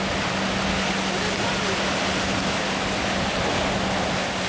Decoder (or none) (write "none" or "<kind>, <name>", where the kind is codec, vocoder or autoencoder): none